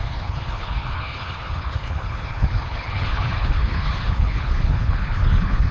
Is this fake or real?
fake